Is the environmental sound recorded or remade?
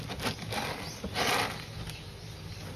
recorded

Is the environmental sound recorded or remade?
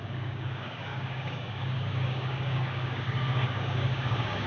remade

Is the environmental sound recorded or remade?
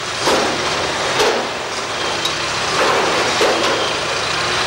recorded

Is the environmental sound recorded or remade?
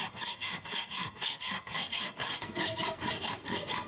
remade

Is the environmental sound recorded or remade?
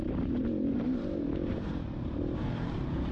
remade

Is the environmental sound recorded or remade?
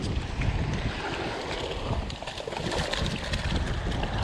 recorded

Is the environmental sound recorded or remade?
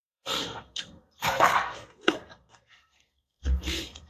remade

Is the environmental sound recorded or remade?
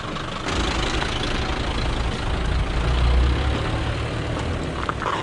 recorded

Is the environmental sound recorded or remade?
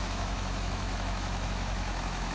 remade